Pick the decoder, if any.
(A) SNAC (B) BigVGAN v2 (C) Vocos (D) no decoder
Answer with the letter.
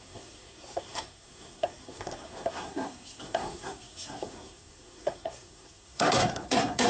A